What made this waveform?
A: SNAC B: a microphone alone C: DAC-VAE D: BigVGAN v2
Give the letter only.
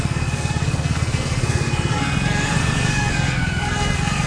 A